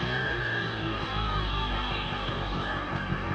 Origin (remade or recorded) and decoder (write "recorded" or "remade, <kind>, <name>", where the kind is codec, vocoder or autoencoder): remade, codec, DAC